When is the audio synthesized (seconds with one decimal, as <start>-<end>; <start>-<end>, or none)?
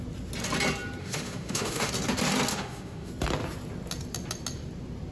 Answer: 1.0-1.9; 2.5-3.1